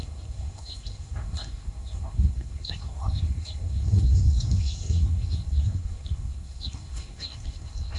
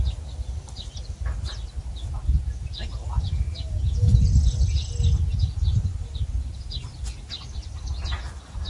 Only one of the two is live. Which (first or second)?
second